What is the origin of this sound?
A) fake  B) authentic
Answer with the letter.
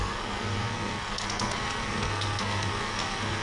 A